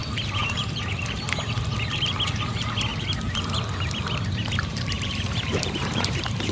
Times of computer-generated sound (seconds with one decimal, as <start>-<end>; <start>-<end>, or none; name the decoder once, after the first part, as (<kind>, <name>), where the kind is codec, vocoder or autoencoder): 0.4-1.4 (vocoder, BigVGAN v2); 2.9-3.6; 4.7-6.5